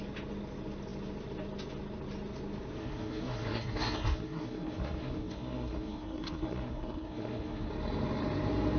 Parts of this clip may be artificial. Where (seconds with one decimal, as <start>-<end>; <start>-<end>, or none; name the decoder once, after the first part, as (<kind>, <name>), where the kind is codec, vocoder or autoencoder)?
2.8-7.7 (codec, SNAC)